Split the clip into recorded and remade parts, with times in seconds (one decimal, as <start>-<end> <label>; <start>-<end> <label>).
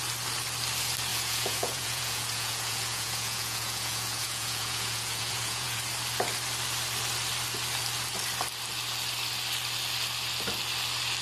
0.0-1.1 recorded; 1.1-5.8 remade; 5.8-11.2 recorded